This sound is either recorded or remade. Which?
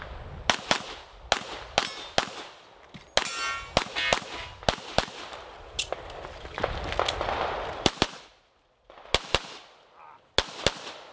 recorded